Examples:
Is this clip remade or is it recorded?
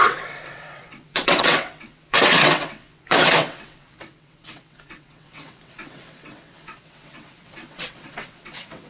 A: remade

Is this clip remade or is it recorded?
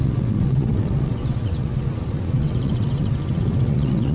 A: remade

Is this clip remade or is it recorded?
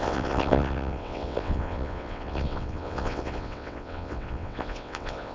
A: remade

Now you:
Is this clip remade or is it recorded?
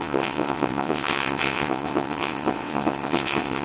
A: remade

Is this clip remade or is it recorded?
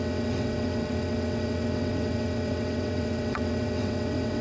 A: remade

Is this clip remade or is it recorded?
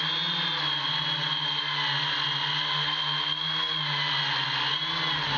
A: recorded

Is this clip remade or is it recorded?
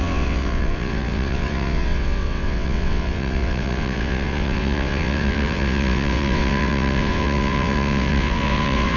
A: remade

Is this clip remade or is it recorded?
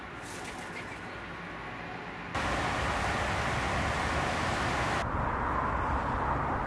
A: recorded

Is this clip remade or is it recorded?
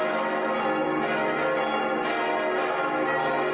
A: recorded